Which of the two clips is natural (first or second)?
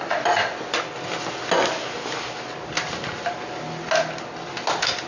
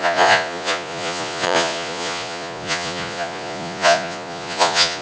first